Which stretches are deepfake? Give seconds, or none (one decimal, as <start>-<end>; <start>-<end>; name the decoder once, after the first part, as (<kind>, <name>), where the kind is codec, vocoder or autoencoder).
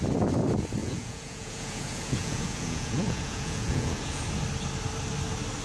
0.8-4.2 (vocoder, Vocos)